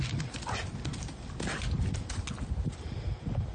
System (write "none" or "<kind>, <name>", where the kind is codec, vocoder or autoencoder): none